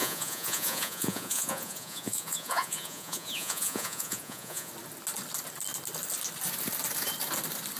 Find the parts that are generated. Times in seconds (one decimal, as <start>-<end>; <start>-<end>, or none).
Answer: 0.0-4.7